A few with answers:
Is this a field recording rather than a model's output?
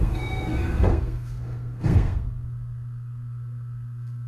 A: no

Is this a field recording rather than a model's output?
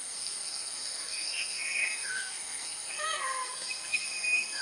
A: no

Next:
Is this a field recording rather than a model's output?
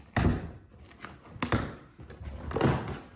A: yes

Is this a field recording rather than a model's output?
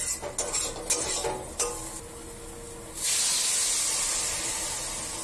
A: yes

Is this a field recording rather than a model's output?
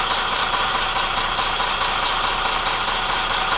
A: yes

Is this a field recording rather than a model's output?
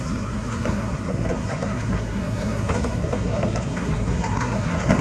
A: no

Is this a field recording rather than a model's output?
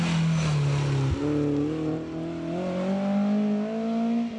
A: yes